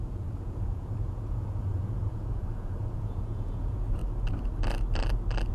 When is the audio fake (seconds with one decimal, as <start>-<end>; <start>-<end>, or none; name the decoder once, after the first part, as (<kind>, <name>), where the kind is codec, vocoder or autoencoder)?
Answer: 0.0-4.0 (vocoder, Vocos)